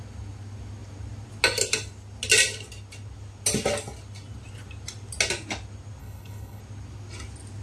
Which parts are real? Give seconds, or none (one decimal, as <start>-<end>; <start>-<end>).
0.0-6.0; 6.6-7.6